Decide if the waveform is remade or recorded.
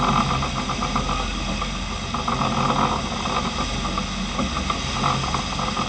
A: recorded